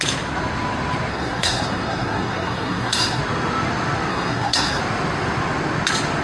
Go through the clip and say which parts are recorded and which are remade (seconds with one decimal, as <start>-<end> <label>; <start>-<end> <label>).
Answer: 0.0-1.1 recorded; 1.1-3.2 remade; 3.2-4.1 recorded; 4.1-4.8 remade; 4.8-6.2 recorded